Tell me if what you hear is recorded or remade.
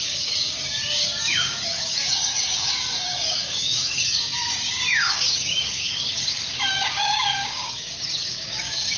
remade